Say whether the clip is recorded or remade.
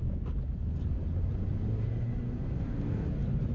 recorded